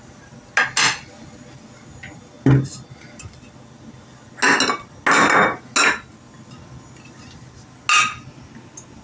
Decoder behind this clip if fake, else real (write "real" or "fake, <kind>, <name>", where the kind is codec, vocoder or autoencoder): real